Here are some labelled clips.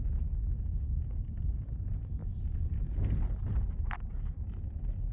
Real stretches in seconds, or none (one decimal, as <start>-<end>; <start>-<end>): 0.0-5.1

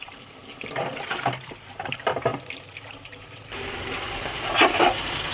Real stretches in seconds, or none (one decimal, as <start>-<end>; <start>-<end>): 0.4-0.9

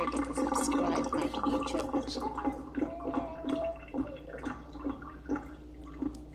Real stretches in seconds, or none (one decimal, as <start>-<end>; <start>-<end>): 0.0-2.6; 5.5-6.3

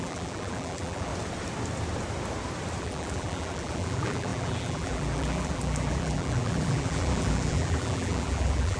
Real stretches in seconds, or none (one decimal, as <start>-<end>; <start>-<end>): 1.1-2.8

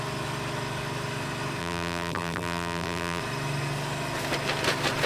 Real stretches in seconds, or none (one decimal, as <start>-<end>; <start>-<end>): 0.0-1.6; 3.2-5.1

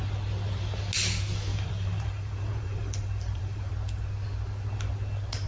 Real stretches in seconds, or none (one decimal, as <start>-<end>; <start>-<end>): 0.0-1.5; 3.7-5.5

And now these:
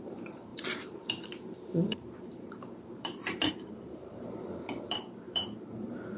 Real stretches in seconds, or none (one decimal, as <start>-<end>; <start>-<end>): none

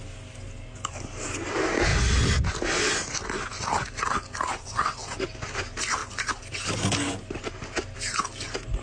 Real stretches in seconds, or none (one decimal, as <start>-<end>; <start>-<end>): 0.0-8.8